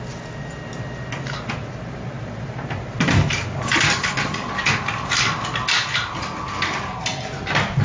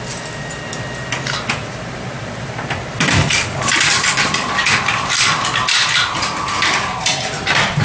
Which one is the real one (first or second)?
first